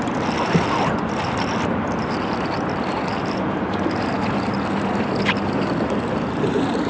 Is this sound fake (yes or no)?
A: no